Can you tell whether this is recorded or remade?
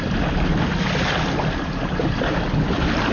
recorded